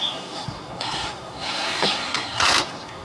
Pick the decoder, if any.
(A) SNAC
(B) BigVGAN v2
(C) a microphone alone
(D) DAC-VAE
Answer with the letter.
A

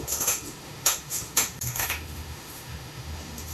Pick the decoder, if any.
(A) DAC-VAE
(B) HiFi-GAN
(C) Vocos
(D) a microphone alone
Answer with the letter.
A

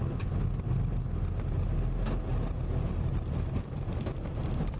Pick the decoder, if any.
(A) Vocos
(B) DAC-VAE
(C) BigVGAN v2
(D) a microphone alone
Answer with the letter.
D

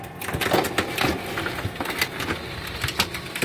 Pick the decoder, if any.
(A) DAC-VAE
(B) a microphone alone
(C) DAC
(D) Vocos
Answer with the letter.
B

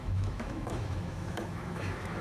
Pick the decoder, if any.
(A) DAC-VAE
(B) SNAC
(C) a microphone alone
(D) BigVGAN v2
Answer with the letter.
A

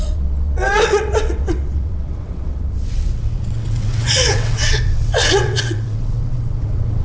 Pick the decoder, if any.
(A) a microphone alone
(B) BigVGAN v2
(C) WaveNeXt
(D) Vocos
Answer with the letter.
C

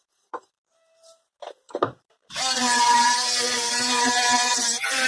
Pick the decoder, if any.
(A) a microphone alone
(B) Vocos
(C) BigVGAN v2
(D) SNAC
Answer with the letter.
C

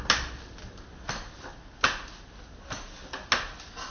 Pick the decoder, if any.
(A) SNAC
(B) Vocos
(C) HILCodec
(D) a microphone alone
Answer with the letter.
D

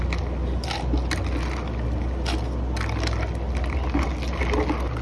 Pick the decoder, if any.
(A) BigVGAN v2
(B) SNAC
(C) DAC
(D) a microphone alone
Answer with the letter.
D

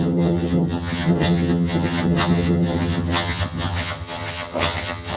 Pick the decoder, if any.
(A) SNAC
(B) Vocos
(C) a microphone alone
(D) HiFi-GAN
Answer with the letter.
D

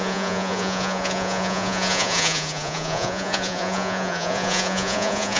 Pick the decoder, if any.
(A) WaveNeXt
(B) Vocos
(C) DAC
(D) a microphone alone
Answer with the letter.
B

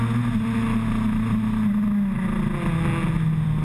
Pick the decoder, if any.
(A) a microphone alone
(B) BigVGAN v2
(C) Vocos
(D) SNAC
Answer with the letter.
A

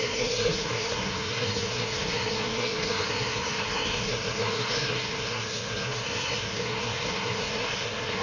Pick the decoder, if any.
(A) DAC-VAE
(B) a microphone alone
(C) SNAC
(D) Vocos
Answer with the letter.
C